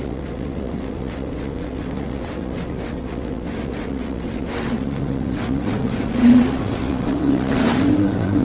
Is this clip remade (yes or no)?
yes